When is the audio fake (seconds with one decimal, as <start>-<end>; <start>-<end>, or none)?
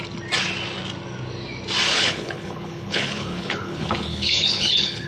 1.9-5.1